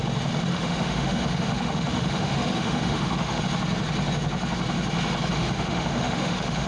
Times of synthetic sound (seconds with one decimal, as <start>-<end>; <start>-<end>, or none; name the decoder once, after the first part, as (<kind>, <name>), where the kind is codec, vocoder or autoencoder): 0.5-3.4 (autoencoder, DAC-VAE); 5.3-6.7